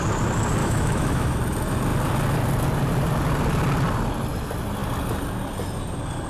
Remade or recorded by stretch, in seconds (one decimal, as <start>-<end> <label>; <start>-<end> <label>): 0.0-0.6 recorded; 0.6-1.4 remade; 1.4-6.3 recorded